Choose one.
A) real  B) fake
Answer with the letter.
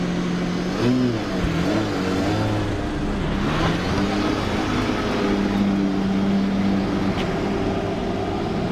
A